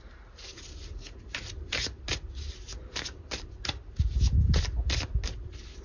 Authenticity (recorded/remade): recorded